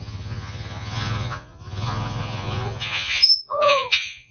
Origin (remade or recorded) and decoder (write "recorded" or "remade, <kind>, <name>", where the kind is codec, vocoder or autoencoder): remade, vocoder, Vocos